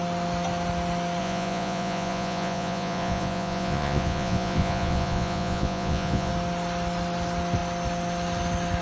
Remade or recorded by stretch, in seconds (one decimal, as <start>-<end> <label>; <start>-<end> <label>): 0.0-1.2 recorded; 1.2-6.3 remade; 6.3-8.8 recorded